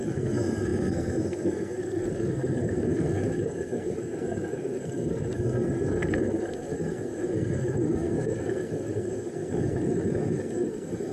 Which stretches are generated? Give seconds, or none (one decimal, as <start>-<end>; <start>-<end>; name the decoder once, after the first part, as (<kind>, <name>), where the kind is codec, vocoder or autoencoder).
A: 0.0-11.1 (codec, SNAC)